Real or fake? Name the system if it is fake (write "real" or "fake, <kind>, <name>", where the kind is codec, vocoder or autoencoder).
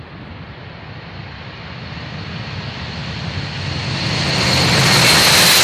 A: real